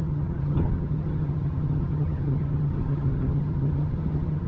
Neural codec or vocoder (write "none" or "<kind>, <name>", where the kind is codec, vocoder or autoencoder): vocoder, HiFi-GAN